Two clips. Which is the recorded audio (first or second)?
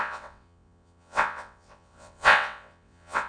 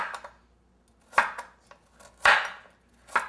second